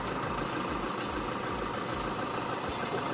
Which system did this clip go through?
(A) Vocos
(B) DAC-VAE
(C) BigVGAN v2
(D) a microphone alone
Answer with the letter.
D